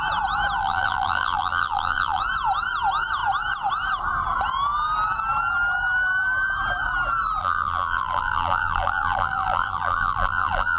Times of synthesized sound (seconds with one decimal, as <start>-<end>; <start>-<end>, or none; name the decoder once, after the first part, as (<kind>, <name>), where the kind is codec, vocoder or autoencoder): 0.6-2.2 (vocoder, BigVGAN v2); 7.4-10.8